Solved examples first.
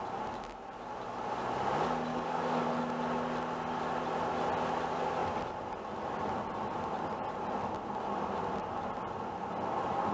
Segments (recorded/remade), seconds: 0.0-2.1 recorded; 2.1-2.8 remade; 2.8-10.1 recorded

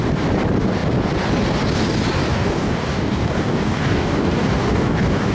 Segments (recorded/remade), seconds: 0.0-2.3 recorded; 2.3-5.3 remade

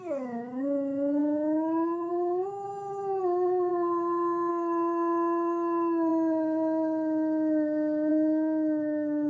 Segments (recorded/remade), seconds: 0.0-3.7 remade; 3.7-4.5 recorded; 4.5-6.1 remade; 6.1-8.1 recorded; 8.1-9.3 remade

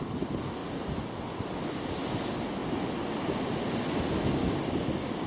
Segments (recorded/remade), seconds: 0.0-4.4 recorded; 4.4-5.3 remade

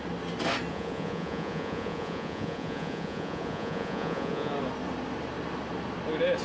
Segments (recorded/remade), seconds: 0.0-0.7 recorded; 0.7-4.5 remade; 4.5-6.4 recorded